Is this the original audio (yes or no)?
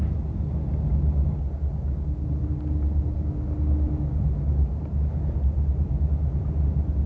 yes